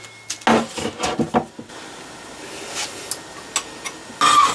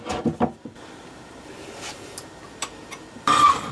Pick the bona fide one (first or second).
first